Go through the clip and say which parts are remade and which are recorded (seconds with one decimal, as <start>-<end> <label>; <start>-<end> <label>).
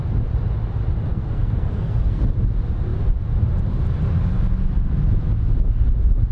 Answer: 0.0-1.1 recorded; 1.1-2.2 remade; 2.2-6.3 recorded